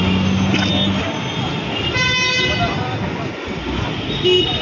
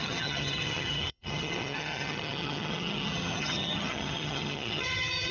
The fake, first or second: second